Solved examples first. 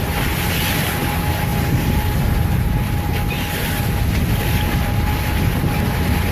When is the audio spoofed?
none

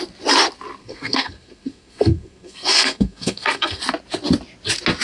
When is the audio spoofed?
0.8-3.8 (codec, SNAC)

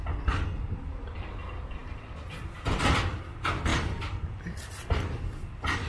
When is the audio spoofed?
3.7-5.9 (vocoder, BigVGAN v2)

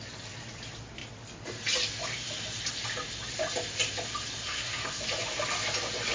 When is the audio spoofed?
4.4-5.0 (codec, SNAC)